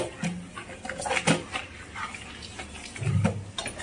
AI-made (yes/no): no